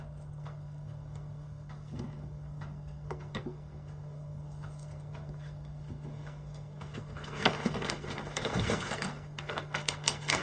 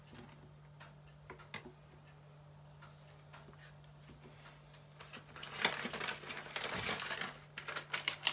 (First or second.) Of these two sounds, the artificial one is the first